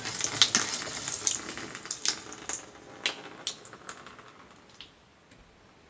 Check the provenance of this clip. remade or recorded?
recorded